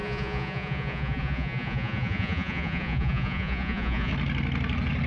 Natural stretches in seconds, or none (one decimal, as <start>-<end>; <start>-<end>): 4.1-5.1